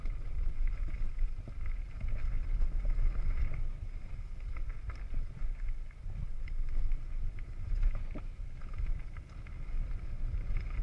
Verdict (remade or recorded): recorded